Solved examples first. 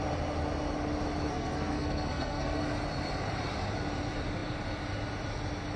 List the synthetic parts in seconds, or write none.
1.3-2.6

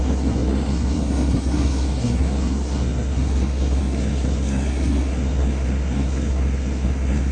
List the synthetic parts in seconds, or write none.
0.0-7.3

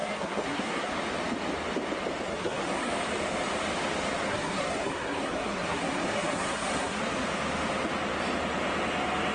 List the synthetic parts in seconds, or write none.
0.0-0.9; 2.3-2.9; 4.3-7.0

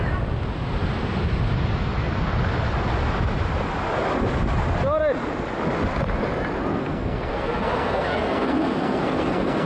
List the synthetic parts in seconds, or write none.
6.7-9.7

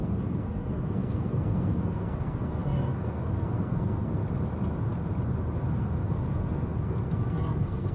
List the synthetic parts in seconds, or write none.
0.0-4.2; 5.7-7.9